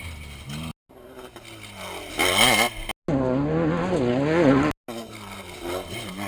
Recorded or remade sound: recorded